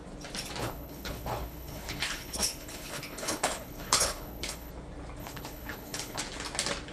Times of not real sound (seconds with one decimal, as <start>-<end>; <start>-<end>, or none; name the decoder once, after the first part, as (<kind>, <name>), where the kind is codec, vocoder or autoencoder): 0.6-4.7 (codec, HILCodec); 5.2-6.2

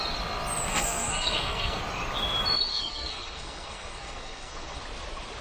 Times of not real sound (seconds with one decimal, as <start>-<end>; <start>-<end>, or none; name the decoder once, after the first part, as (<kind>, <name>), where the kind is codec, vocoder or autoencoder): 0.7-1.8 (codec, SNAC); 2.7-4.8

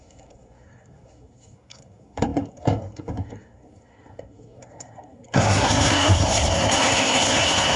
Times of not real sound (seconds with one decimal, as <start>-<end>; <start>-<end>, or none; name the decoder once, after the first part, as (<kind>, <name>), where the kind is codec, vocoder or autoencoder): 0.0-7.8 (codec, SNAC)

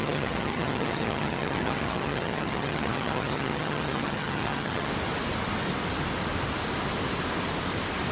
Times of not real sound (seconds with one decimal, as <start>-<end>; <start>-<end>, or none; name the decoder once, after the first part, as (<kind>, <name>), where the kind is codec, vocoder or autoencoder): 0.0-4.9 (vocoder, HiFi-GAN)

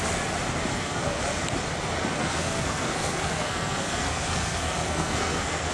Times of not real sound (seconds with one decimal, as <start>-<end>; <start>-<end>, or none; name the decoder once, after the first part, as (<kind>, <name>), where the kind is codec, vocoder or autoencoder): 0.7-1.2 (codec, SNAC); 2.2-5.7

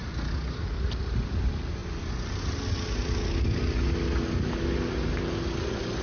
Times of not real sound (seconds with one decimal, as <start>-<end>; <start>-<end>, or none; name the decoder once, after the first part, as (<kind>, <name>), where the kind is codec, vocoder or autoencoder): none

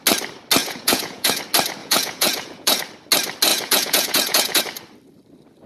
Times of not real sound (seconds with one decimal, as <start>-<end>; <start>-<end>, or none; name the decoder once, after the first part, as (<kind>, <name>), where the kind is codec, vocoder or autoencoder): 0.6-1.4 (vocoder, Vocos); 1.8-2.8; 3.5-4.6